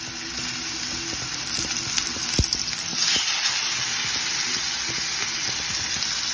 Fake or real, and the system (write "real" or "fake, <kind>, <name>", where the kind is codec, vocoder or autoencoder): real